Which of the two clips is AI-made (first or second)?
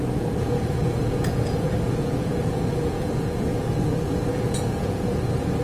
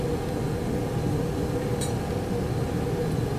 first